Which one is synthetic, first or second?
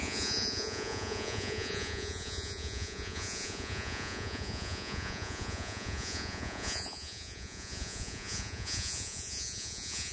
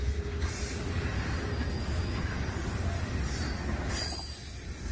first